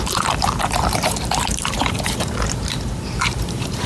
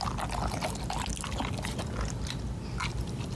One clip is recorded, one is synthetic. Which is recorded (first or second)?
second